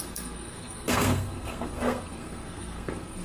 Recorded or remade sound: remade